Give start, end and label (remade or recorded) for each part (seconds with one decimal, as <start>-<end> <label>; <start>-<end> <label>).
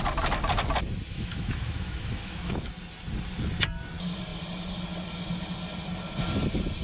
0.0-1.1 recorded; 1.1-2.7 remade; 2.7-6.8 recorded